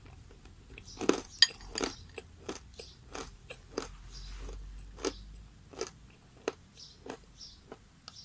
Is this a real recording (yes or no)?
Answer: yes